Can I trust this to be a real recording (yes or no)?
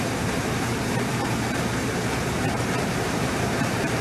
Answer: no